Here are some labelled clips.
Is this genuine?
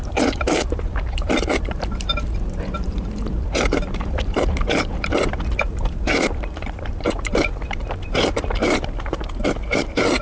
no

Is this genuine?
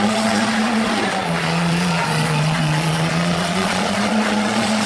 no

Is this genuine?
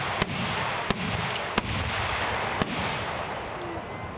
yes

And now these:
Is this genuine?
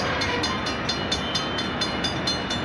yes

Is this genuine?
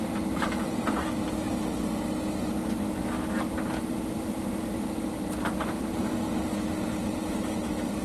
yes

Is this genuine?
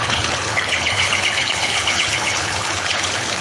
no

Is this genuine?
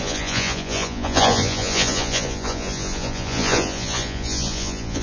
no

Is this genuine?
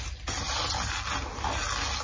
yes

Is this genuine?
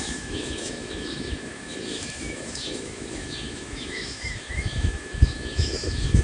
no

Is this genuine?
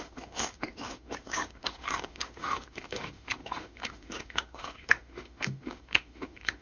no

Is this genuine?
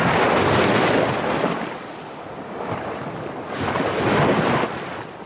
yes